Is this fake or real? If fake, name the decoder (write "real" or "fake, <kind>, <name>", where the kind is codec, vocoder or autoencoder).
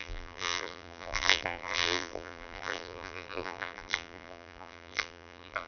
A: fake, vocoder, BigVGAN v2